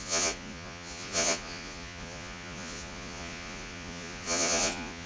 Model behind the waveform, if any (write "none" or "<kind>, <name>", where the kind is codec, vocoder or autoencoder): vocoder, Vocos